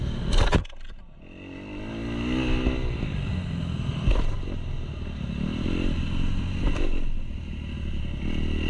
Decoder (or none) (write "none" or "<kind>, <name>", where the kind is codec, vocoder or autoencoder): none